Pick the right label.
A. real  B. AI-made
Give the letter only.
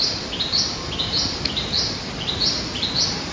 B